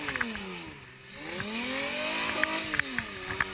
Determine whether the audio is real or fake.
real